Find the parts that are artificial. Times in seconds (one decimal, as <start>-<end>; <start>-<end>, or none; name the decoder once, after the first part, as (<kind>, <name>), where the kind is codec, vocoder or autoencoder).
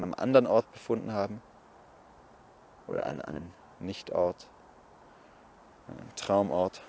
2.9-3.6 (codec, SNAC)